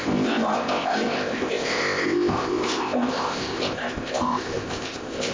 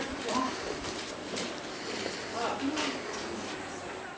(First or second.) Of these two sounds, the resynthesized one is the first